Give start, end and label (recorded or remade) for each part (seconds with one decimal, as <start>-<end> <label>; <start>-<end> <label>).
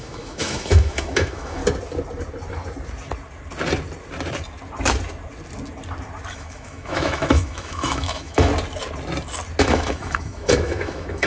0.0-1.6 remade; 1.6-6.3 recorded; 6.3-8.5 remade; 8.5-9.6 recorded; 9.6-11.3 remade